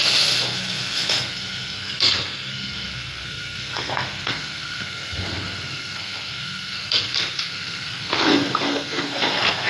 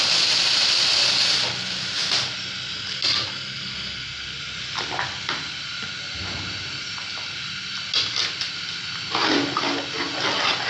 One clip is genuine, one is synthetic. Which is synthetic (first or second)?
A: first